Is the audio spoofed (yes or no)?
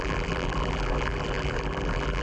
yes